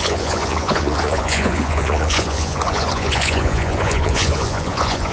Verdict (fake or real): fake